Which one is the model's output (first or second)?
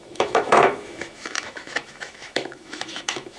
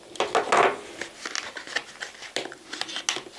first